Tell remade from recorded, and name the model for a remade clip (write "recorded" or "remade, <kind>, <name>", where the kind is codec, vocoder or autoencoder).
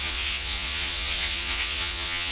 remade, vocoder, Vocos